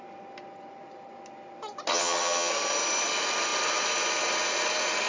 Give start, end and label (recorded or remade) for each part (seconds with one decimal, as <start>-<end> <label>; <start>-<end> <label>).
0.0-1.9 recorded; 1.9-2.5 remade; 2.5-5.1 recorded